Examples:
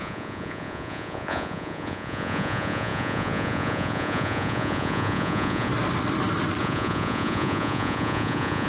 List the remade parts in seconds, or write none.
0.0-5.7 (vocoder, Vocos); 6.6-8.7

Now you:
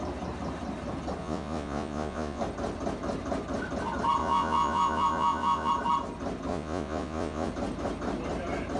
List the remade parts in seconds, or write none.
1.2-2.4 (vocoder, Vocos); 4.2-5.7; 6.5-7.5

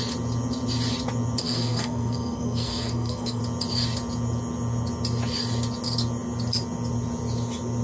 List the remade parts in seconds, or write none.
1.4-3.4 (codec, SNAC)